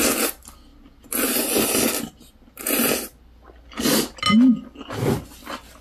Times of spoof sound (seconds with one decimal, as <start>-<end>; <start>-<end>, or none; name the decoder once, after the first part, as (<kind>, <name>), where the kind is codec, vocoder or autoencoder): none